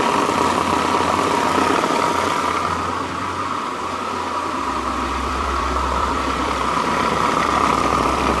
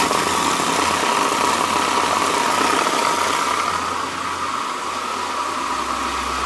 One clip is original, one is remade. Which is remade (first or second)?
first